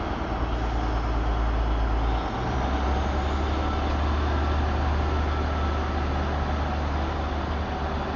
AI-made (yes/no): no